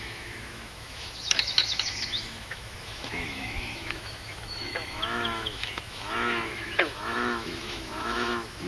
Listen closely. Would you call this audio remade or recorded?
remade